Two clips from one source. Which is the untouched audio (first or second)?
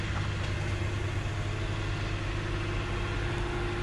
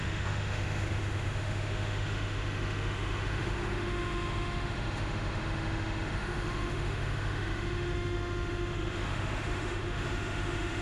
first